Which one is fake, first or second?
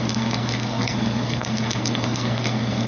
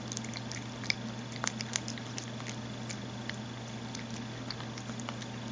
first